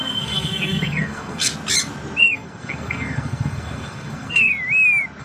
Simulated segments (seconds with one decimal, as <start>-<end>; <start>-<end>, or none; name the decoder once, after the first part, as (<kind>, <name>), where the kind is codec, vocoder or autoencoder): 0.0-1.5 (codec, SNAC); 2.2-4.5